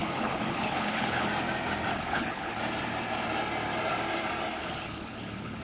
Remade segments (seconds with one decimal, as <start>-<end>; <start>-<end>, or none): 0.0-1.3; 1.9-2.6; 4.6-5.6